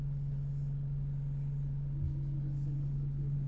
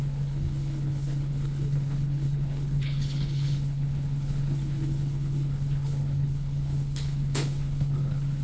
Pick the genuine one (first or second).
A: first